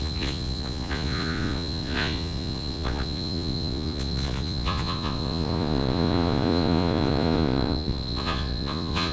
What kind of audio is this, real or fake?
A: fake